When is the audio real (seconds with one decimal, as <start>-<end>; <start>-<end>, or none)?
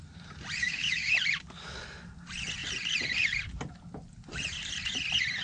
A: 0.0-0.6; 1.1-5.4